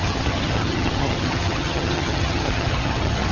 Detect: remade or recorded remade